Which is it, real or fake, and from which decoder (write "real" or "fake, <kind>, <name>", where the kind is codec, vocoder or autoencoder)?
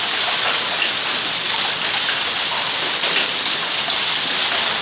real